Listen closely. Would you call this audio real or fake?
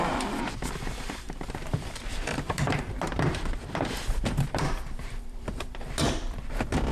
fake